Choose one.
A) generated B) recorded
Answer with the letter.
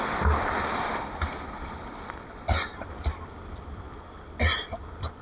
B